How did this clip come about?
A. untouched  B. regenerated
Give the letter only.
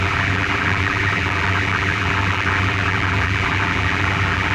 B